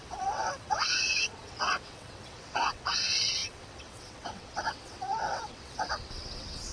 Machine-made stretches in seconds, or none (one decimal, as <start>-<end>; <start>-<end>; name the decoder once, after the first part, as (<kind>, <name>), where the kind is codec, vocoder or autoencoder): 0.0-6.7 (vocoder, WaveNeXt)